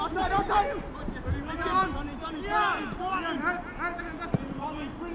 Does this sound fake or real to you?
real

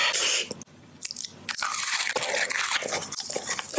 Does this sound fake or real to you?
real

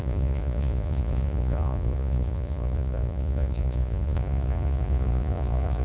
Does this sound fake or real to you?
fake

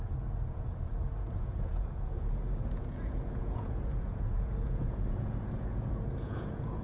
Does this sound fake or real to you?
fake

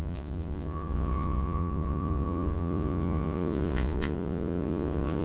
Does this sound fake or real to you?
fake